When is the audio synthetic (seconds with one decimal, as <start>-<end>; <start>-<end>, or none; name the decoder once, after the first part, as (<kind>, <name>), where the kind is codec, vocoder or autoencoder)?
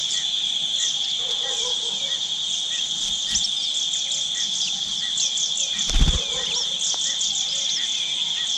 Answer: none